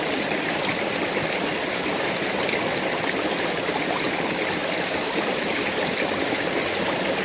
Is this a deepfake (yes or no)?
no